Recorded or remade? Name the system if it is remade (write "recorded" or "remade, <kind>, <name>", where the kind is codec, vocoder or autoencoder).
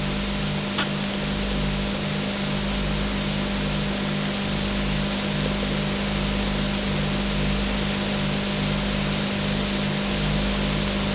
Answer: recorded